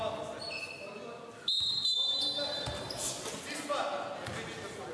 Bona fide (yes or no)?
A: yes